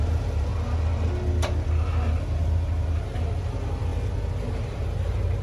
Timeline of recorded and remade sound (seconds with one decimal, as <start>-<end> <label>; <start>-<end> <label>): 0.0-0.5 remade; 0.5-3.4 recorded; 3.4-3.9 remade; 3.9-4.5 recorded; 4.5-5.4 remade